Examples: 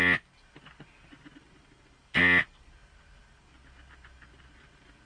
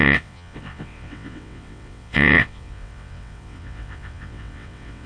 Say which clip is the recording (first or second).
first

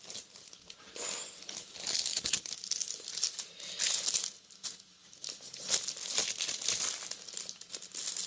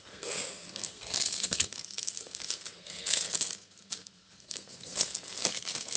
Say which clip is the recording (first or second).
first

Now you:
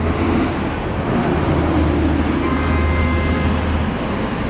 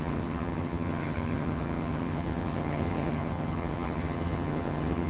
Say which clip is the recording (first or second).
first